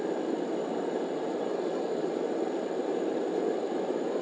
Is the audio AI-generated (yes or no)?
no